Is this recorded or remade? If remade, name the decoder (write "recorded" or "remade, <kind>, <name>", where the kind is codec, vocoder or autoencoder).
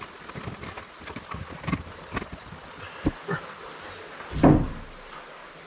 recorded